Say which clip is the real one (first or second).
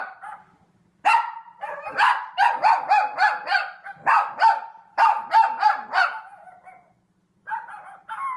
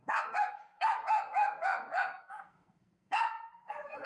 first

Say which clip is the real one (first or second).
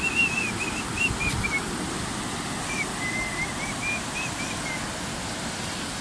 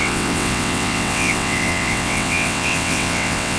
first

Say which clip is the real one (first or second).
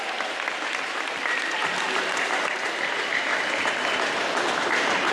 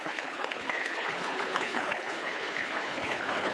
first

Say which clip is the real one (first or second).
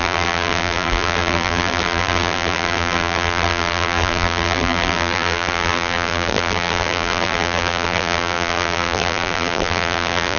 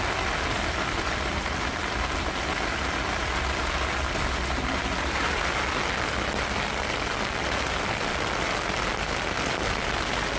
second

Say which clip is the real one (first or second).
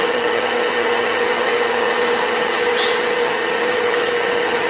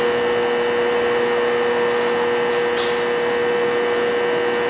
second